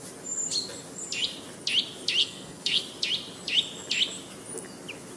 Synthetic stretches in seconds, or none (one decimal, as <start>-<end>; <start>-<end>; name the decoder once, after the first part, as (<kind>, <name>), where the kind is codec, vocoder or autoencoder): 2.2-2.8 (codec, SNAC)